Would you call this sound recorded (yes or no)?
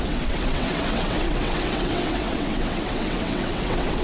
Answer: no